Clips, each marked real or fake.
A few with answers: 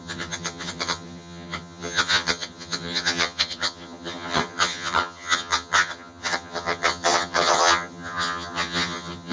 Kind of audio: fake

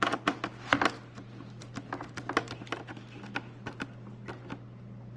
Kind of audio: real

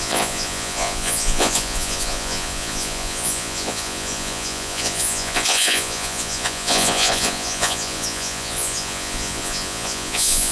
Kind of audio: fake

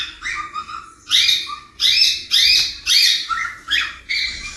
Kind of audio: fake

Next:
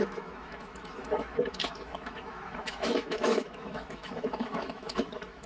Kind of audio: fake